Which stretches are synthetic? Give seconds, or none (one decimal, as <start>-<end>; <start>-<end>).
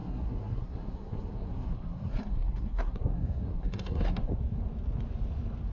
0.0-4.3